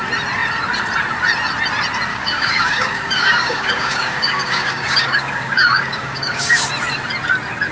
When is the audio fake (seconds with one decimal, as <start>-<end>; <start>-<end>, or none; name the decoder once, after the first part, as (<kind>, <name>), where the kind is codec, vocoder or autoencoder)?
2.1-6.7 (codec, DAC)